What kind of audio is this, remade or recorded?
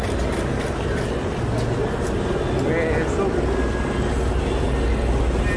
recorded